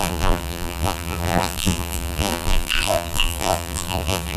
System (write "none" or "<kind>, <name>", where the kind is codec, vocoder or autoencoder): vocoder, BigVGAN v2